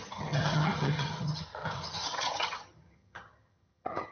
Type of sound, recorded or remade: remade